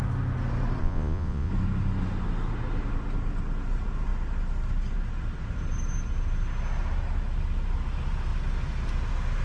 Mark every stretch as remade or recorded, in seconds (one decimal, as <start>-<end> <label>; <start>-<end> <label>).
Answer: 0.0-0.8 recorded; 0.8-1.5 remade; 1.5-9.4 recorded